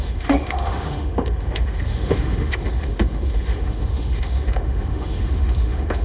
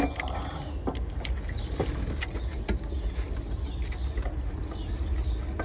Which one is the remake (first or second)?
first